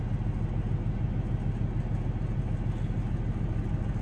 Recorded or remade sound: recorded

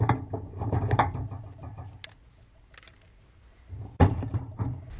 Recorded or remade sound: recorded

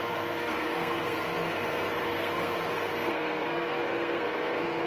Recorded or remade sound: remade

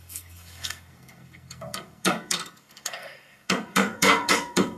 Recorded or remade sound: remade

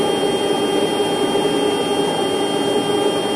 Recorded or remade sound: recorded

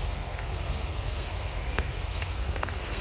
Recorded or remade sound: remade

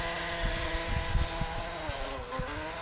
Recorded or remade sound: recorded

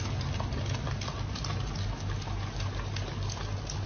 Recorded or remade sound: recorded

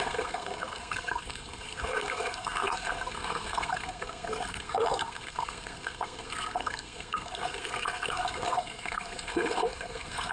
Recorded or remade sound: remade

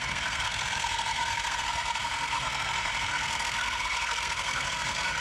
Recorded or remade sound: remade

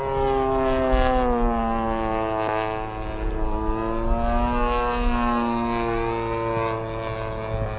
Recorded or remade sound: recorded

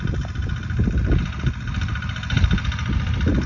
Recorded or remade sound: recorded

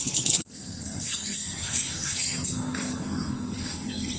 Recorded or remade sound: remade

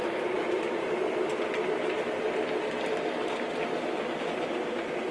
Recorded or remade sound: recorded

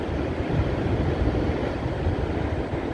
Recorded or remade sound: recorded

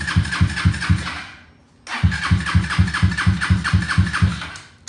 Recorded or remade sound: recorded